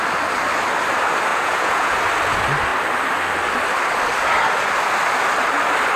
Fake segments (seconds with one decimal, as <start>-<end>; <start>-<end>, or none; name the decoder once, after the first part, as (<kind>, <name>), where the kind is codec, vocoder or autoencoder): 1.3-1.9 (vocoder, Vocos)

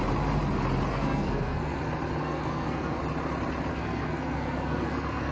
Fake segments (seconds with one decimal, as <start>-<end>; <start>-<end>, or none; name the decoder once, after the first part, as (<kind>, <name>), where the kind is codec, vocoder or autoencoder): 0.9-1.8 (codec, SNAC); 2.2-3.0; 3.7-5.3